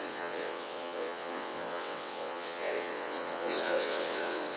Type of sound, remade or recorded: remade